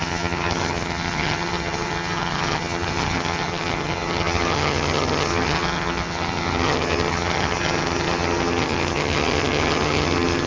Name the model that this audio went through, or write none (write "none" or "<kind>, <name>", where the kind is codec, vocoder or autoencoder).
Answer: vocoder, HiFi-GAN